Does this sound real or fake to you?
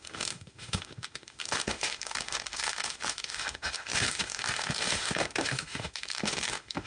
fake